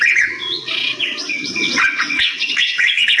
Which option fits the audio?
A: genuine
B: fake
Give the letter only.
B